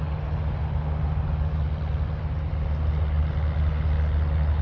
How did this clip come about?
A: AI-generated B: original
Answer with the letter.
B